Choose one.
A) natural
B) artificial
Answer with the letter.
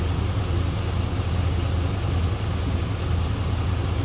A